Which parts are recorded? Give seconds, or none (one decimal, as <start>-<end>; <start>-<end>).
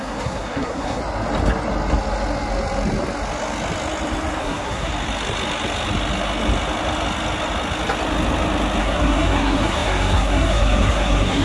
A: 1.0-4.4; 4.9-8.8